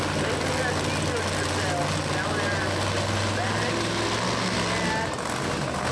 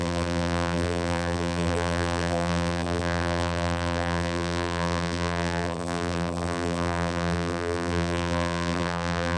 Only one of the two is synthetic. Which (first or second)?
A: second